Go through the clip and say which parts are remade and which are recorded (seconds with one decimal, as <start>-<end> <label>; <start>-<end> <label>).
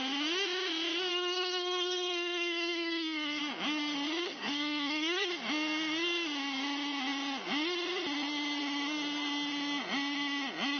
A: 0.0-1.1 recorded; 1.1-3.4 remade; 3.4-4.2 recorded; 4.2-5.3 remade; 5.3-10.8 recorded